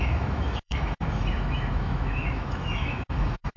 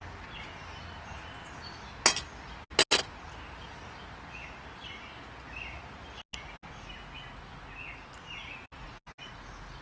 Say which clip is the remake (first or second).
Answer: first